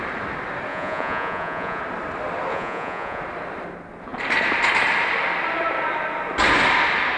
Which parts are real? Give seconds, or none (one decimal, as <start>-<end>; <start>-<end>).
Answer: 0.0-0.7; 1.8-2.5; 3.2-7.2